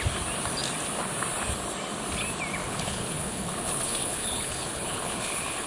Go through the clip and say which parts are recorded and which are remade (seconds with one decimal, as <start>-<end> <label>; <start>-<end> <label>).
0.0-2.6 recorded; 2.6-5.7 remade